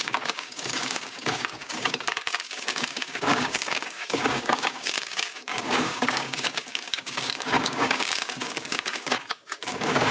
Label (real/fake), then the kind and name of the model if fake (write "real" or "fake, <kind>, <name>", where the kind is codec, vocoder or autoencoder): fake, codec, DAC